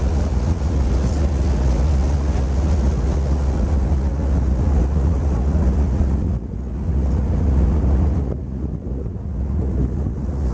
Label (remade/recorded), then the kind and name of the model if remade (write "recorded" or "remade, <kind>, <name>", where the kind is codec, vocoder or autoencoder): remade, vocoder, Vocos